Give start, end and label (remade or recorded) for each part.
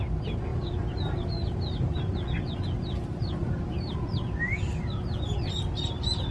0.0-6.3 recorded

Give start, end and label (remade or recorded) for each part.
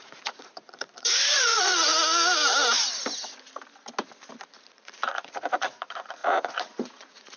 0.0-1.9 remade; 1.9-4.4 recorded; 4.4-7.4 remade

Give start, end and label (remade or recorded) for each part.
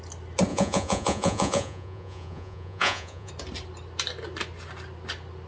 0.0-0.5 recorded; 0.5-3.3 remade; 3.3-5.5 recorded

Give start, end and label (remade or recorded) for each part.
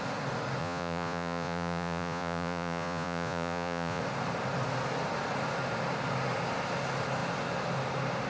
0.0-0.6 recorded; 0.6-4.0 remade; 4.0-8.3 recorded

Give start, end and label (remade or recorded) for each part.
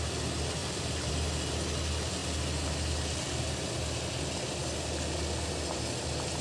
0.0-6.4 recorded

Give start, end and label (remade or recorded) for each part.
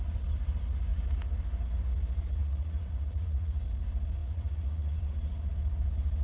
0.0-2.4 recorded; 2.4-3.6 remade; 3.6-4.2 recorded; 4.2-5.0 remade; 5.0-6.2 recorded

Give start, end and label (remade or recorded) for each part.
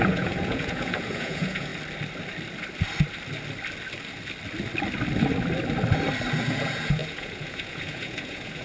0.0-1.7 remade; 1.7-6.4 recorded; 6.4-8.6 remade